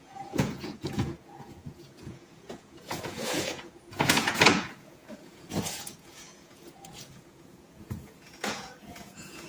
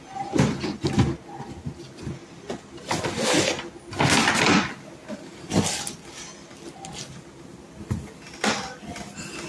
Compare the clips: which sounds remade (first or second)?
first